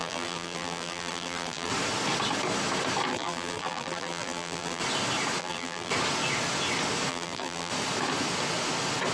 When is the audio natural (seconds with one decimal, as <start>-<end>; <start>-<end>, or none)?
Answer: 1.7-3.1; 4.8-5.4; 5.9-7.1; 7.7-9.1